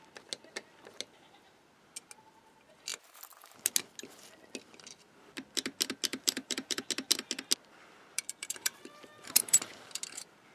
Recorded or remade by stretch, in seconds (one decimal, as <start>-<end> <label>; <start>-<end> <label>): 0.0-6.1 recorded; 6.1-6.8 remade; 6.8-8.4 recorded; 8.4-9.7 remade; 9.7-10.5 recorded